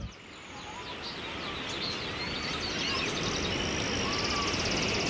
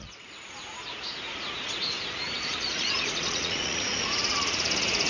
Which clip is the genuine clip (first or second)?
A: first